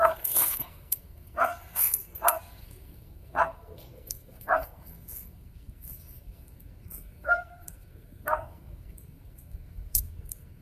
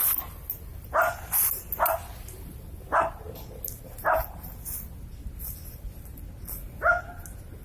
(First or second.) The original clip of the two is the second